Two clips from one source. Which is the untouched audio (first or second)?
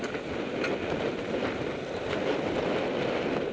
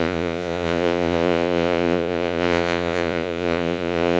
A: first